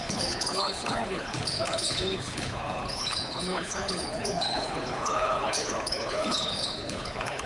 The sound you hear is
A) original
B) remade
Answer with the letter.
B